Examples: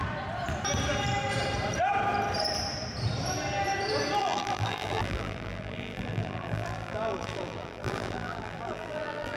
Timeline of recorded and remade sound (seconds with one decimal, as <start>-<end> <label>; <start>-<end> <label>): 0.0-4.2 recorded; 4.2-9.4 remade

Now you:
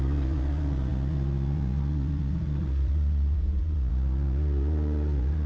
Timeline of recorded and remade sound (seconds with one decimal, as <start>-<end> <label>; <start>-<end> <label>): 0.0-5.5 remade

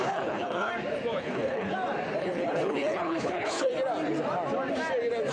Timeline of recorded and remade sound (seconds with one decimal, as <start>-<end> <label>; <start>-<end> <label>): 0.0-0.7 remade; 0.7-1.2 recorded; 1.2-1.7 remade; 1.7-2.2 recorded; 2.2-3.7 remade; 3.7-5.3 recorded

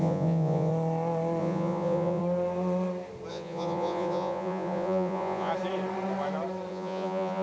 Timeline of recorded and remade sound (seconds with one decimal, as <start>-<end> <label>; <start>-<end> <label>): 0.0-0.7 remade; 0.7-1.4 recorded; 1.4-2.2 remade; 2.2-3.3 recorded; 3.3-5.5 remade; 5.5-6.7 recorded; 6.7-7.4 remade

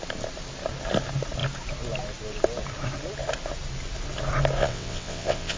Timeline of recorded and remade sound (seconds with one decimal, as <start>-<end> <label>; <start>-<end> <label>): 0.0-4.6 recorded; 4.6-5.6 remade

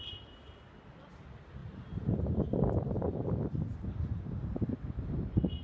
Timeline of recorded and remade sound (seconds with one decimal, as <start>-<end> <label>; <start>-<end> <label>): 0.0-5.6 recorded